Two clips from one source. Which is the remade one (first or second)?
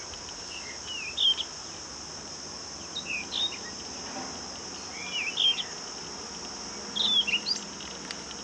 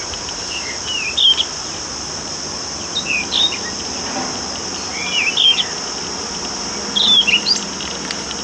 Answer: second